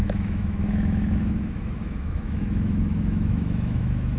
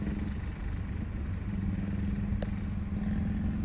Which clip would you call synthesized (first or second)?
first